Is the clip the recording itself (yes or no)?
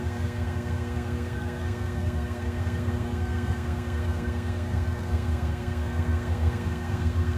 no